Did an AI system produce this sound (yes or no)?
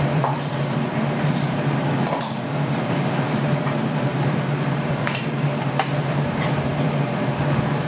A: yes